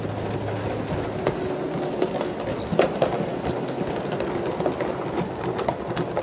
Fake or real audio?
real